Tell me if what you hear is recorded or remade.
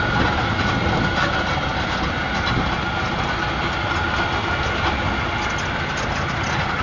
recorded